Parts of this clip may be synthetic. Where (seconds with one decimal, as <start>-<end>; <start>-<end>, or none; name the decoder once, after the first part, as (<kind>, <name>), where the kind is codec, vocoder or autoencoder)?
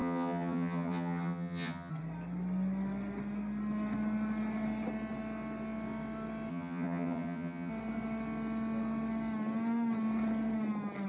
0.0-1.9 (vocoder, HiFi-GAN); 6.5-7.7